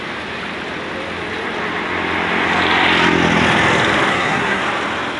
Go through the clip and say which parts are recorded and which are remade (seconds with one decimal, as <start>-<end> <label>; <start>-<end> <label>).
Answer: 0.0-4.1 recorded; 4.1-4.6 remade; 4.6-5.2 recorded